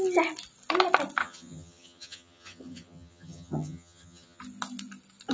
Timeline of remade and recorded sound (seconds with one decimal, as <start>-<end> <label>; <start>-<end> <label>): 0.0-1.2 recorded; 1.2-4.4 remade; 4.4-5.3 recorded